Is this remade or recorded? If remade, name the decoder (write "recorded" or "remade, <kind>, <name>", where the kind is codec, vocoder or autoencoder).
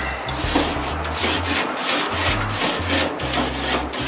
recorded